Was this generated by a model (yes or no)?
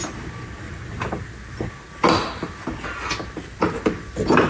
no